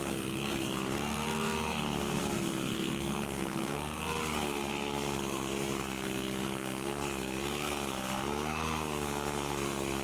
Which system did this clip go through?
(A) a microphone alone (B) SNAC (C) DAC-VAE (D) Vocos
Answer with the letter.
B